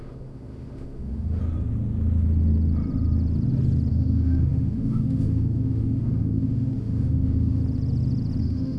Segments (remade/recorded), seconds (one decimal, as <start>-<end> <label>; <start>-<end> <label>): 0.0-1.4 remade; 1.4-3.9 recorded; 3.9-7.6 remade; 7.6-8.4 recorded; 8.4-8.8 remade